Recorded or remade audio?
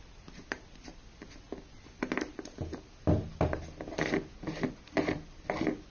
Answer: recorded